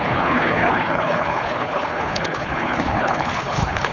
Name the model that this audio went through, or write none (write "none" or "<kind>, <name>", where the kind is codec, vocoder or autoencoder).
codec, HILCodec